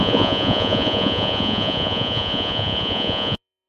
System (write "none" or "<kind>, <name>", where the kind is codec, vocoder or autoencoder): vocoder, Vocos